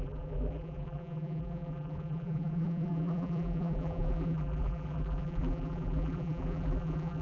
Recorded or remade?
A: remade